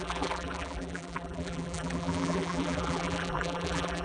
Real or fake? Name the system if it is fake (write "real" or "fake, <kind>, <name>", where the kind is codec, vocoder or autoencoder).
fake, vocoder, BigVGAN v2